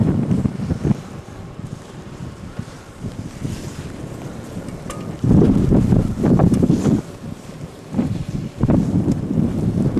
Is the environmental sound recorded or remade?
remade